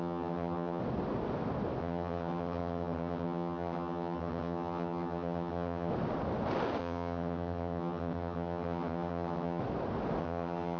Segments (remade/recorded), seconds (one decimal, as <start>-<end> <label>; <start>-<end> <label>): 0.0-0.8 remade; 0.8-1.8 recorded; 1.8-5.9 remade; 5.9-6.8 recorded; 6.8-9.6 remade; 9.6-10.2 recorded; 10.2-10.8 remade